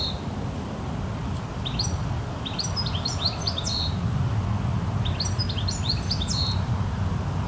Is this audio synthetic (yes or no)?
no